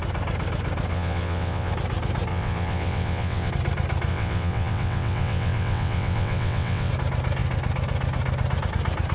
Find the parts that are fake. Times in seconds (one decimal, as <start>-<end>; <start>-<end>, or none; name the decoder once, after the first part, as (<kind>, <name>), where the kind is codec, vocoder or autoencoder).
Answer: 0.9-1.7 (vocoder, WaveNeXt); 2.3-3.5; 4.1-6.9